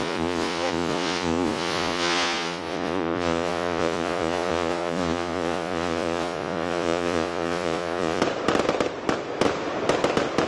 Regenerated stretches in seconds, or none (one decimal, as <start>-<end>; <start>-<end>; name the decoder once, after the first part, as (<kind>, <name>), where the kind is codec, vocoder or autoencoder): 0.0-8.2 (vocoder, Vocos)

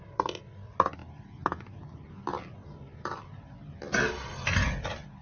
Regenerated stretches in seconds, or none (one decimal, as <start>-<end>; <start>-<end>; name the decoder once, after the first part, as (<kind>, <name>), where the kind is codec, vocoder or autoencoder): none

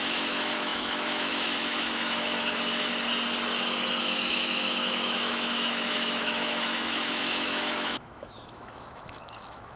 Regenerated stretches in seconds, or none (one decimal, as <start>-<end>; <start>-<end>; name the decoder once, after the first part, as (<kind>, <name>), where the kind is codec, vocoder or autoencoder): 0.0-2.9 (autoencoder, DAC-VAE); 4.0-9.8

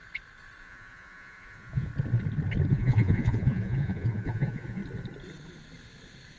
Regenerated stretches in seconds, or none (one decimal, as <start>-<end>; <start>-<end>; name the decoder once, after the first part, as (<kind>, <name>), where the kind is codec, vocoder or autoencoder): 0.6-1.9 (vocoder, Vocos); 2.7-4.8

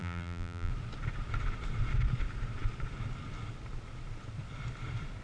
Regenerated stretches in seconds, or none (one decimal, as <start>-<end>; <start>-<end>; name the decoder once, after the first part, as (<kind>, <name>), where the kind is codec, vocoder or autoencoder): 0.0-0.7 (vocoder, BigVGAN v2)

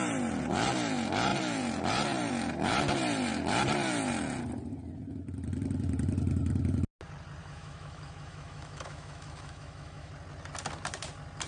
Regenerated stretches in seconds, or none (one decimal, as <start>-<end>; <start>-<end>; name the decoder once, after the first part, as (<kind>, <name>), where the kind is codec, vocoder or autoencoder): 7.4-10.1 (autoencoder, DAC-VAE)